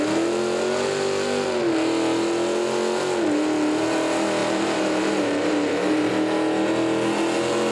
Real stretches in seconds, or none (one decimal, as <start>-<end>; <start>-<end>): 0.0-4.4; 6.1-7.7